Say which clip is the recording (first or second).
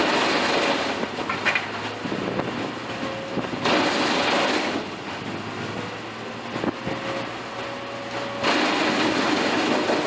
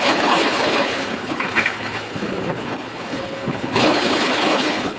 first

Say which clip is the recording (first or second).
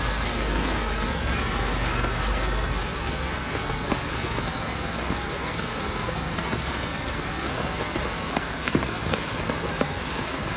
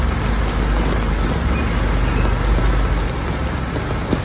second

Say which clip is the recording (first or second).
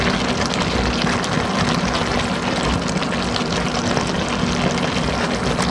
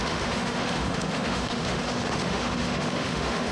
first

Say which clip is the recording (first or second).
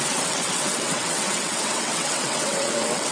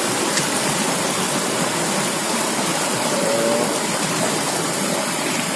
second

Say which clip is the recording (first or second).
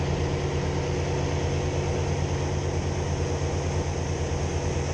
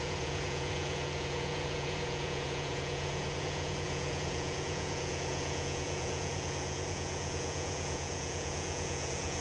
first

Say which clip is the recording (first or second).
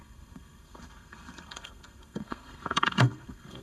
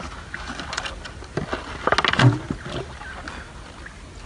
second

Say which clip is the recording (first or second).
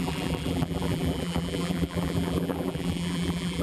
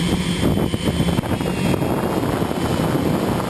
second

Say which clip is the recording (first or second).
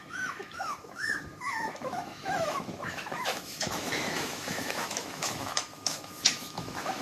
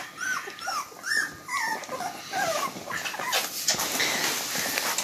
second